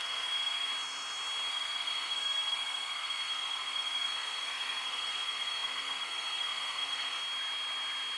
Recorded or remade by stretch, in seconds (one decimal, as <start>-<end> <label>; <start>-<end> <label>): 0.0-0.7 remade; 0.7-1.5 recorded; 1.5-7.2 remade; 7.2-8.2 recorded